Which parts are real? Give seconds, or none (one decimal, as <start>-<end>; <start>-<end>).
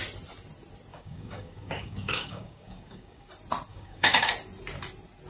0.0-0.9; 3.3-3.7; 4.3-5.3